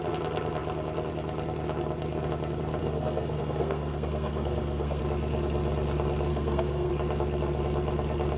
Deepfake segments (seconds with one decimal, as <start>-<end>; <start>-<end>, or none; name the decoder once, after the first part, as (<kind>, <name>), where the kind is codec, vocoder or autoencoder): 2.8-5.0 (codec, SNAC); 6.3-6.9